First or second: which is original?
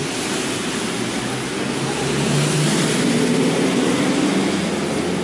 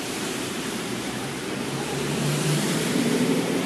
first